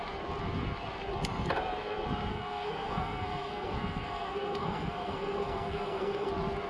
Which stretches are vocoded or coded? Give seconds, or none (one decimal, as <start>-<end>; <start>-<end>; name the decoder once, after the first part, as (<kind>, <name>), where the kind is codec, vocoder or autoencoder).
2.3-6.3 (codec, SNAC)